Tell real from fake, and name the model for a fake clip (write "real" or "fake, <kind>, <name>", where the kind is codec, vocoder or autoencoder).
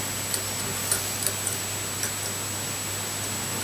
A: real